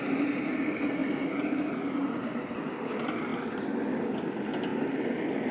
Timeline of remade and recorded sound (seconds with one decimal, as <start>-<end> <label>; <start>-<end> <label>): 0.0-5.5 recorded